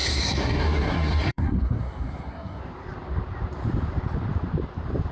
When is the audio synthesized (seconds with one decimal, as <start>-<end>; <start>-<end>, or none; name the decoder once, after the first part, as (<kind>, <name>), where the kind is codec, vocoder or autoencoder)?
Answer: 0.0-2.6 (codec, SNAC)